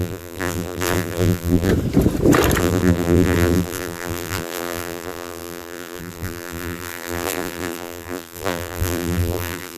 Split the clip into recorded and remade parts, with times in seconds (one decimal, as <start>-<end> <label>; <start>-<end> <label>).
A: 0.0-1.7 remade; 1.7-2.6 recorded; 2.6-9.8 remade